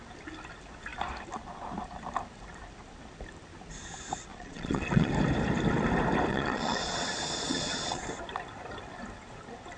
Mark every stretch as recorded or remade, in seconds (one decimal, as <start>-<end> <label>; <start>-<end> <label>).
0.0-4.3 recorded; 4.3-5.1 remade; 5.1-6.3 recorded; 6.3-8.1 remade; 8.1-9.8 recorded